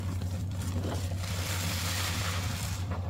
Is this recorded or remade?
remade